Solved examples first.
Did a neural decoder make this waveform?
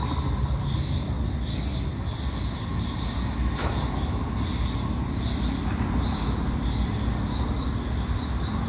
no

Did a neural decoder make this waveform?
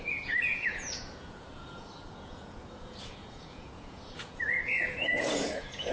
yes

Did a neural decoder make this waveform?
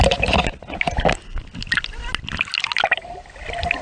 no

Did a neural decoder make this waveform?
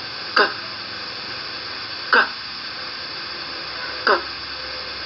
no